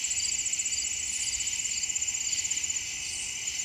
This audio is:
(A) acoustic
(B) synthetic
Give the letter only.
A